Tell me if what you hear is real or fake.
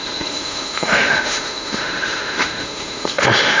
fake